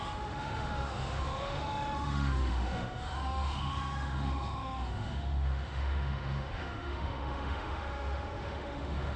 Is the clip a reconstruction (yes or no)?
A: yes